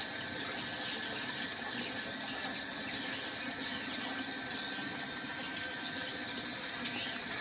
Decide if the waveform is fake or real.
real